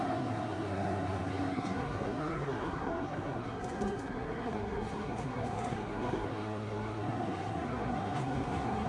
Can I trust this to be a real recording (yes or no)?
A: no